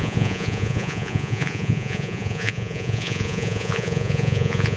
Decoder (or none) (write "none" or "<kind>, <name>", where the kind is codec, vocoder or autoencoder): vocoder, Vocos